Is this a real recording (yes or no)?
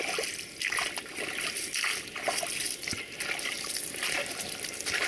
yes